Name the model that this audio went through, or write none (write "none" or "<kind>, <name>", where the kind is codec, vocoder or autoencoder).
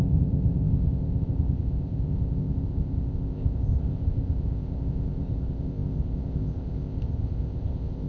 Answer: codec, ZipCodec